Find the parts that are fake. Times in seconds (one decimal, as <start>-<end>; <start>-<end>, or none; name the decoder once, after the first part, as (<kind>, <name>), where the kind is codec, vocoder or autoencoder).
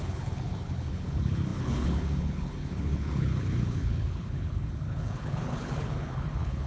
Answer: 0.0-6.7 (codec, HILCodec)